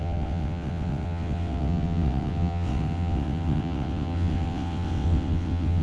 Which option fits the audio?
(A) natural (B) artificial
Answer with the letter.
B